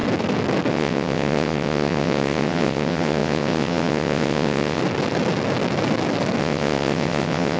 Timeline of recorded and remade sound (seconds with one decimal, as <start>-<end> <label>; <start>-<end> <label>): 0.0-0.7 recorded; 0.7-4.8 remade; 4.8-6.4 recorded; 6.4-7.6 remade